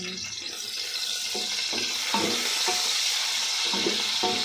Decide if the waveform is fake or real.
real